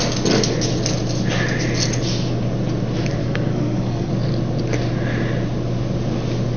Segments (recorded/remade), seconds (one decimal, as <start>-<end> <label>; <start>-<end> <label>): 0.0-3.2 recorded; 3.2-4.1 remade; 4.1-6.6 recorded